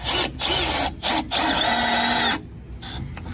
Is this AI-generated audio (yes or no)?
no